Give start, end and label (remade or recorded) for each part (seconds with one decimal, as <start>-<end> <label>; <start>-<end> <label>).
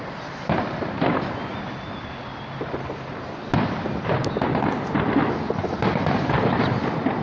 0.0-1.5 remade; 1.5-5.8 recorded; 5.8-7.2 remade